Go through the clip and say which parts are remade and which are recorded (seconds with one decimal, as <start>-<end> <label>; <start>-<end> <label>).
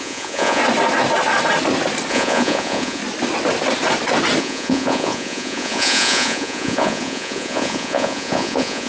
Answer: 0.0-0.6 remade; 0.6-2.1 recorded; 2.1-3.0 remade; 3.0-4.4 recorded; 4.4-8.9 remade